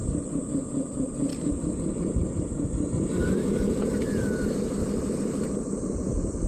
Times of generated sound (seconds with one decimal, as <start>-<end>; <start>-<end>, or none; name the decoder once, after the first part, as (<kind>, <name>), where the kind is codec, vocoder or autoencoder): 0.0-0.5 (vocoder, BigVGAN v2); 1.3-2.3